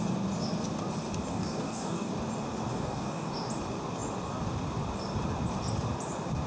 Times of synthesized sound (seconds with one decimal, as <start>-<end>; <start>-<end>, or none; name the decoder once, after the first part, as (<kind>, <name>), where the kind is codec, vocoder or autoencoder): 1.3-2.1 (codec, DAC); 2.7-3.3